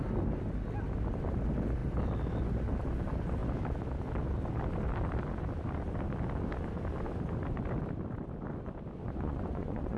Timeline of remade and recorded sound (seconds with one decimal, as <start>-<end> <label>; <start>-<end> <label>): 0.0-9.0 recorded; 9.0-10.0 remade